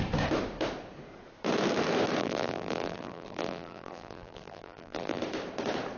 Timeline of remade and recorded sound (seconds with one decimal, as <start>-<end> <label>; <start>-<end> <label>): 0.0-2.2 recorded; 2.2-5.2 remade; 5.2-6.0 recorded